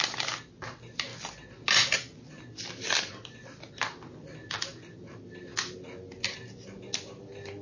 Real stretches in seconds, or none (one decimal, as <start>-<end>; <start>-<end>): 0.0-7.6